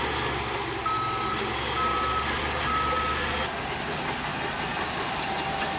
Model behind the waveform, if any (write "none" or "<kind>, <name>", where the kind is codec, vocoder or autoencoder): none